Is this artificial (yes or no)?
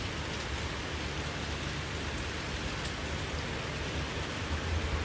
no